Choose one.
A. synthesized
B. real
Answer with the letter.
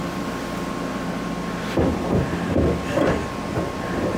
B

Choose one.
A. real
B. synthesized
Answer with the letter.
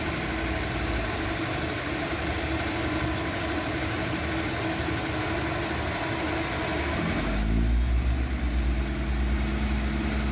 A